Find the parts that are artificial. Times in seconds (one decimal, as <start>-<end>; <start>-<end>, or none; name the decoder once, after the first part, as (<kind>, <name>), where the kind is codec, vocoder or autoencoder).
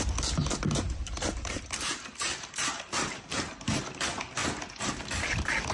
0.4-3.8 (vocoder, BigVGAN v2)